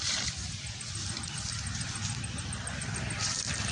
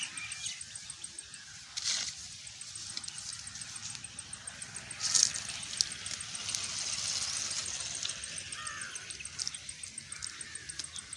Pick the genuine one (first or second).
second